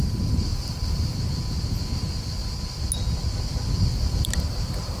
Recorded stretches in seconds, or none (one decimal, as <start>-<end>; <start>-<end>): 0.0-0.5; 1.2-3.9